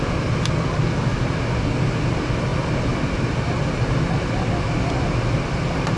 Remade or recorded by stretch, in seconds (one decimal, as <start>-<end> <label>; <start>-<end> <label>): 0.0-6.0 recorded